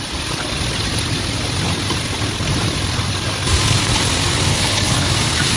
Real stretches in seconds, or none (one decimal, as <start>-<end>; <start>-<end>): 0.0-4.5; 5.1-5.6